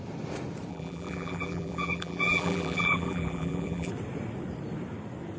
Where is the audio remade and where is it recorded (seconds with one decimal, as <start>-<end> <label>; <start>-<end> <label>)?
0.0-0.7 recorded; 0.7-3.9 remade; 3.9-5.4 recorded